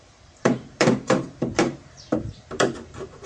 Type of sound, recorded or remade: remade